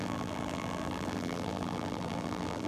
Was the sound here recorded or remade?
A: remade